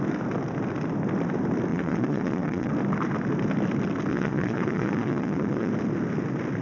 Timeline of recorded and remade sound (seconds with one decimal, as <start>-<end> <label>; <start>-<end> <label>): 0.0-1.7 recorded; 1.7-2.7 remade; 2.7-4.1 recorded; 4.1-5.7 remade; 5.7-6.6 recorded